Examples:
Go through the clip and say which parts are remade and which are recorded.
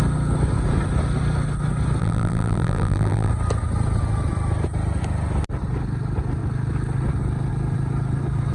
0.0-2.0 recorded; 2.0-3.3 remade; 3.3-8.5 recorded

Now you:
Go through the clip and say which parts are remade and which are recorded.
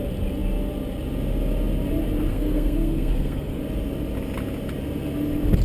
0.0-2.3 recorded; 2.3-3.6 remade; 3.6-5.6 recorded